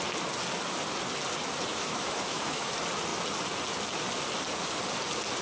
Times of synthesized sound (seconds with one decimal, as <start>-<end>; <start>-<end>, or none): 1.7-2.7

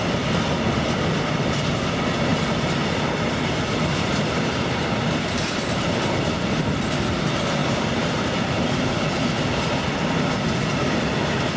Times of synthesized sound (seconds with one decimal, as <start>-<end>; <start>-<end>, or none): 2.3-5.9; 7.6-9.8

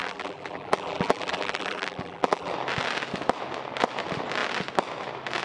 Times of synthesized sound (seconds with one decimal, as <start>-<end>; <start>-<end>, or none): 0.0-2.5

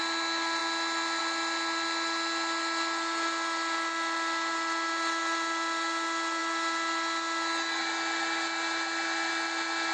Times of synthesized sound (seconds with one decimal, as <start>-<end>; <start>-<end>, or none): none

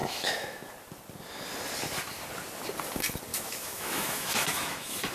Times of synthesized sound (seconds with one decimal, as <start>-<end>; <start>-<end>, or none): 0.0-0.7; 3.3-5.1